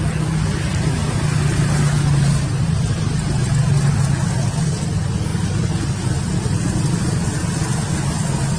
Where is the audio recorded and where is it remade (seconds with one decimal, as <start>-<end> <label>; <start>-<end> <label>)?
0.0-8.6 recorded